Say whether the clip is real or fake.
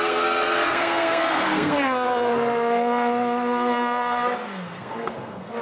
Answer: fake